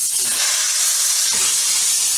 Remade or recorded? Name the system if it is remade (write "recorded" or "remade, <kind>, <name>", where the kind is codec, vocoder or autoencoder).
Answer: recorded